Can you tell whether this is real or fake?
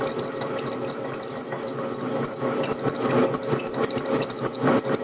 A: real